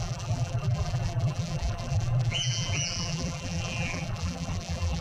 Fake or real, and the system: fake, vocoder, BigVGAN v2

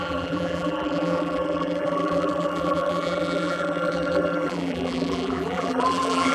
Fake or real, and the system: fake, vocoder, BigVGAN v2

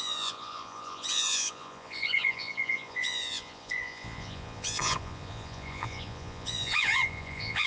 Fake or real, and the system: fake, vocoder, Vocos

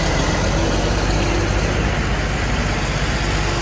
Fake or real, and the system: real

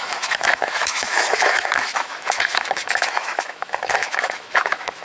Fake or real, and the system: fake, autoencoder, DAC-VAE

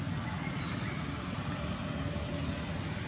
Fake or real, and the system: real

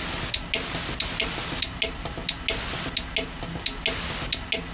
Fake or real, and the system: real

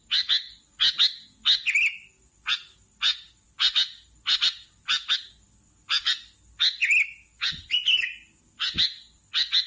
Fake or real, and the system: real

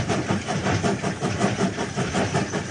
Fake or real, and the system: real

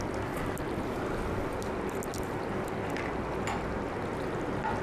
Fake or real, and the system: real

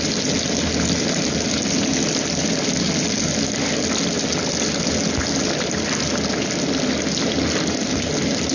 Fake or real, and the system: real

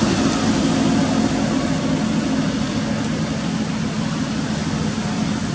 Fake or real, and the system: real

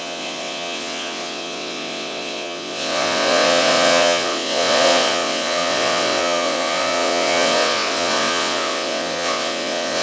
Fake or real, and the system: fake, vocoder, WaveNeXt